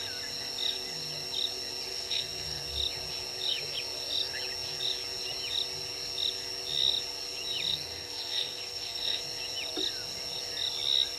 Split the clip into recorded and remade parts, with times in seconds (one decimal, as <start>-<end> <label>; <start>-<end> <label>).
0.0-1.9 recorded; 1.9-2.6 remade; 2.6-7.7 recorded; 7.7-9.2 remade; 9.2-11.2 recorded